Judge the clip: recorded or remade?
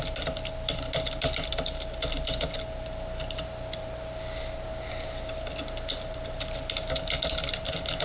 recorded